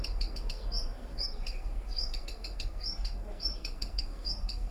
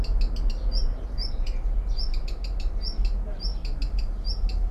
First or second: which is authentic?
second